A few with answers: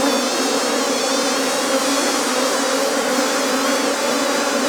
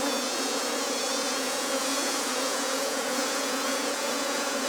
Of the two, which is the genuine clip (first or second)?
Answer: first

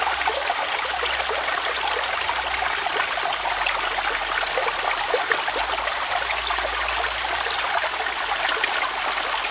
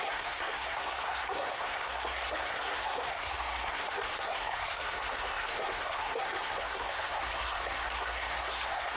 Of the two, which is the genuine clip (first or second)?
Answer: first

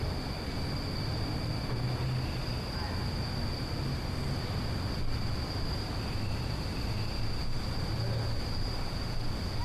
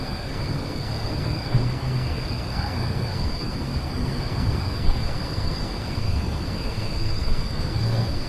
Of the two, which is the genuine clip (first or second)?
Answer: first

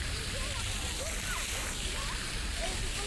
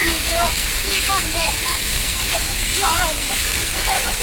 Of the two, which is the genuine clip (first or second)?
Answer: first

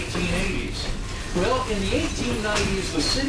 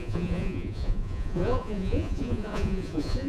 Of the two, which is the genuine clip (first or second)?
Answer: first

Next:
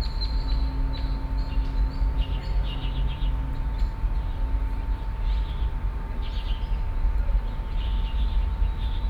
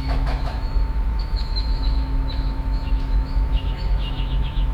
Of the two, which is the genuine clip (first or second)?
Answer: first